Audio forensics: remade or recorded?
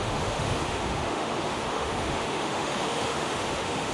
remade